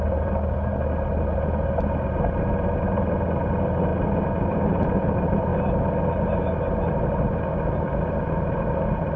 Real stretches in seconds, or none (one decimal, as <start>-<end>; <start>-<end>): 0.7-2.8; 3.9-4.5; 5.5-7.0